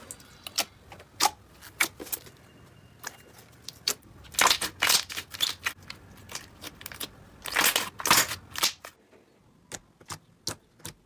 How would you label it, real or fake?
real